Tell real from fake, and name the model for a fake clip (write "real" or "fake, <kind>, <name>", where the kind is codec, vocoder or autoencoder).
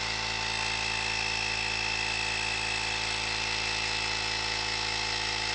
real